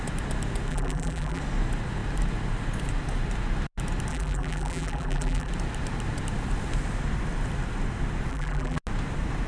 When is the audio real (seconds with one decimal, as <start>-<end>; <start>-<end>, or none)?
0.0-0.7; 1.4-4.1; 5.5-8.3; 8.8-9.5

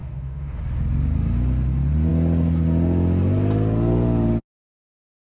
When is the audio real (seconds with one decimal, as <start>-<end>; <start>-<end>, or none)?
0.6-5.2

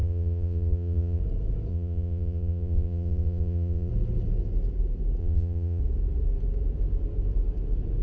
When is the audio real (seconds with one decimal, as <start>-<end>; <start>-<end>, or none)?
1.2-1.7; 3.9-5.2; 5.8-8.0

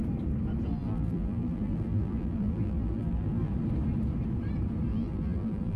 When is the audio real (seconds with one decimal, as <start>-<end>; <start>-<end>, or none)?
0.0-0.7; 3.5-4.9